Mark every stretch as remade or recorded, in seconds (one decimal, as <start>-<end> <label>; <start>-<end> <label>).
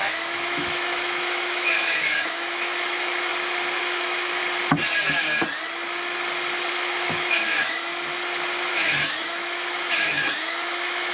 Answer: 0.0-3.3 remade; 3.3-3.8 recorded; 3.8-4.4 remade; 4.4-6.7 recorded; 6.7-7.9 remade; 7.9-8.7 recorded; 8.7-11.1 remade